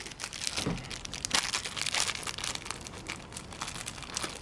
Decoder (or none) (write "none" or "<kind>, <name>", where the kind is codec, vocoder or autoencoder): none